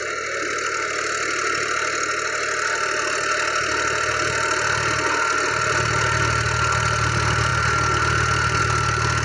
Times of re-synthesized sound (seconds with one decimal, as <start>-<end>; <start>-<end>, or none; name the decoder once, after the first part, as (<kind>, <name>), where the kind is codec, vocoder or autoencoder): none